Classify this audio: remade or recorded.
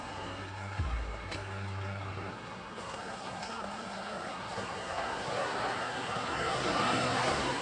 remade